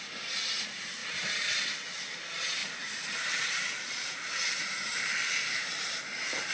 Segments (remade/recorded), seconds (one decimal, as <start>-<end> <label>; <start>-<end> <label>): 0.0-1.0 recorded; 1.0-1.6 remade; 1.6-2.6 recorded; 2.6-6.5 remade